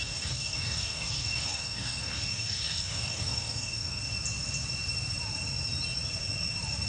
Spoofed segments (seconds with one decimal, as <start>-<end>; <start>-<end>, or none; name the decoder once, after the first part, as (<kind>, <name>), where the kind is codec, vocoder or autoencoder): 0.0-4.0 (codec, DAC)